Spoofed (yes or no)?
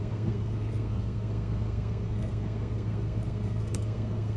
yes